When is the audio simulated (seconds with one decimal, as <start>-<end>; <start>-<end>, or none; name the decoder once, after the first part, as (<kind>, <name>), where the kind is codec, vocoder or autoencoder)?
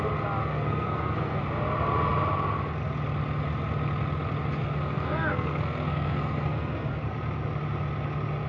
0.5-1.4 (codec, SNAC); 4.6-6.9